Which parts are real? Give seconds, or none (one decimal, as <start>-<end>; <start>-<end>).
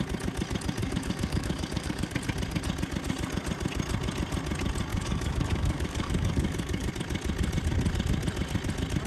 0.0-0.8; 2.1-4.9; 6.9-9.1